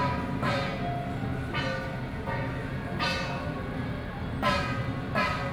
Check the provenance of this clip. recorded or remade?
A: recorded